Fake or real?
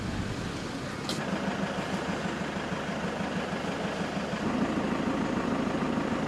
real